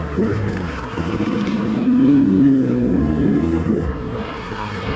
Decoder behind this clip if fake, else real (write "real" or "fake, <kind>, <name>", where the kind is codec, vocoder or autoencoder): fake, codec, SNAC